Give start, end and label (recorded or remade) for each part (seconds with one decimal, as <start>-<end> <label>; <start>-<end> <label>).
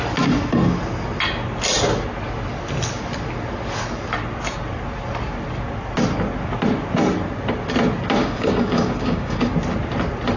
0.0-8.2 recorded; 8.2-9.5 remade; 9.5-10.4 recorded